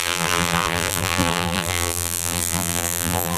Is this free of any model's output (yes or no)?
no